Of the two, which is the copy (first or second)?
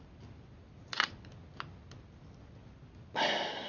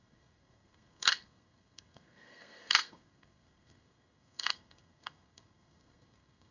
second